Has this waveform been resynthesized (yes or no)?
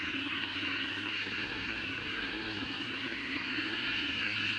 yes